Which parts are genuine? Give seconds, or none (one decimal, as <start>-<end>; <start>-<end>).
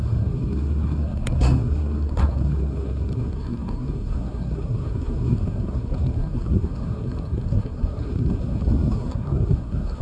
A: none